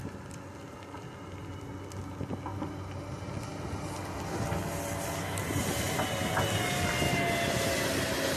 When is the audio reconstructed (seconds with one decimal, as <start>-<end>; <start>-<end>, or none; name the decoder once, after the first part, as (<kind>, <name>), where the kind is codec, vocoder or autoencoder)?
none